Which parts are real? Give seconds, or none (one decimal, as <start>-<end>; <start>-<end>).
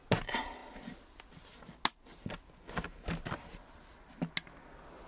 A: 0.0-5.1